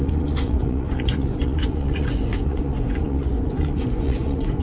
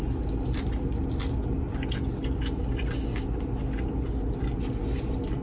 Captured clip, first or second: second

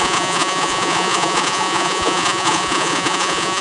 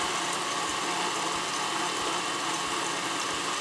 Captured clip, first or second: second